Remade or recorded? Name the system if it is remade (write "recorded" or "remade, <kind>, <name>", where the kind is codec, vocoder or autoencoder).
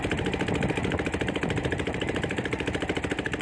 remade, vocoder, BigVGAN v2